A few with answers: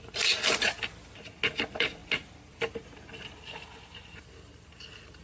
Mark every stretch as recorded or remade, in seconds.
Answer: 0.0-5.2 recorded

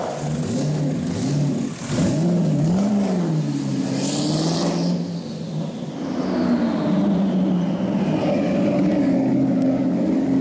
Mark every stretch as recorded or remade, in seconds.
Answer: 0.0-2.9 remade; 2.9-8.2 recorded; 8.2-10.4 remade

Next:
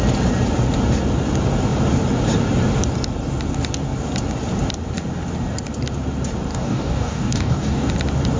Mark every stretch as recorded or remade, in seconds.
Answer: 0.0-6.5 recorded; 6.5-7.9 remade; 7.9-8.4 recorded

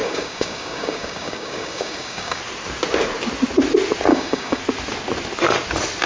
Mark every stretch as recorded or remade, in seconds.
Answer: 0.0-2.4 remade; 2.4-4.1 recorded; 4.1-4.6 remade; 4.6-6.1 recorded

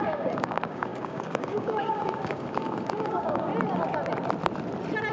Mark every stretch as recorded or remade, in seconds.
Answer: 0.0-3.5 remade; 3.5-5.1 recorded